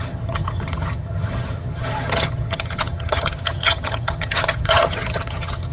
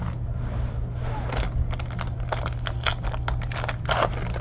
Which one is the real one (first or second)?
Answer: second